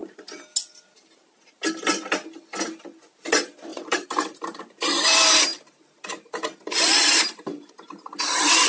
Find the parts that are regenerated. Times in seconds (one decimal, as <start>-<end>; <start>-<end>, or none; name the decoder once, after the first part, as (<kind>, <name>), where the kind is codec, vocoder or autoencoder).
3.7-4.6 (vocoder, BigVGAN v2); 5.5-6.3